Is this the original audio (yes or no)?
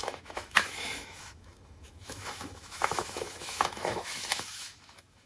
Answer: no